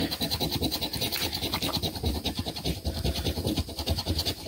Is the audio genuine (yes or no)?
yes